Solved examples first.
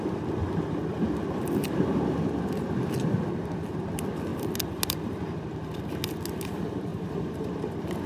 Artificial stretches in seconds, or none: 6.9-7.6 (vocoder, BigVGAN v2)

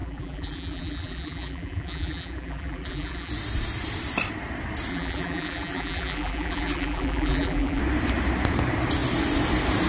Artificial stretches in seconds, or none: 0.0-3.3 (vocoder, BigVGAN v2); 4.9-7.8

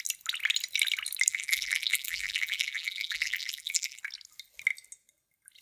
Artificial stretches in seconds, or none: 1.3-4.0 (vocoder, BigVGAN v2)

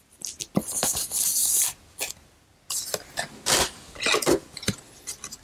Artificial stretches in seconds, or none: none

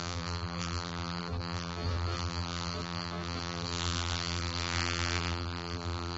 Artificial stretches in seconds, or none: 0.0-6.2 (vocoder, BigVGAN v2)